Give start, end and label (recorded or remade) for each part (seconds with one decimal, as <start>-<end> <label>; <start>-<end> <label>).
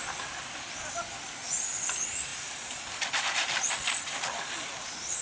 0.0-5.2 recorded